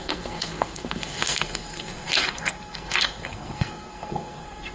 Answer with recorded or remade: remade